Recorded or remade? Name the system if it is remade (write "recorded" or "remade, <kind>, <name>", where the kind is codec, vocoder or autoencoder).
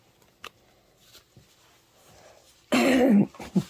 recorded